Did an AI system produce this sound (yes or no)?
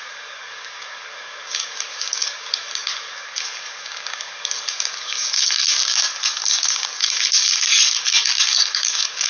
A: yes